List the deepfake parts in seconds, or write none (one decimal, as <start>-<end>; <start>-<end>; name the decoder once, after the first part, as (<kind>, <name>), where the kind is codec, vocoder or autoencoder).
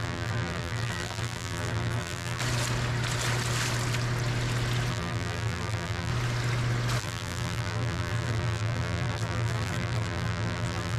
0.0-2.4 (vocoder, BigVGAN v2); 4.9-6.1; 7.0-11.0